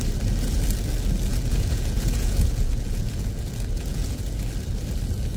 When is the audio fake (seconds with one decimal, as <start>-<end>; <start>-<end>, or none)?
1.3-4.5